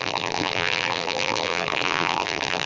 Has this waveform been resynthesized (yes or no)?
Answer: yes